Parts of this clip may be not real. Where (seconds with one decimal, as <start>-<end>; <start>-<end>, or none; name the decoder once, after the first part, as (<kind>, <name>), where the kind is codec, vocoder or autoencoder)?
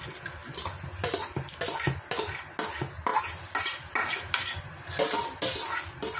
none